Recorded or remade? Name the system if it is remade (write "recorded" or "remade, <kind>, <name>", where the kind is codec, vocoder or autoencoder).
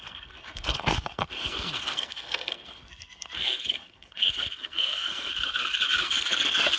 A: remade, codec, SNAC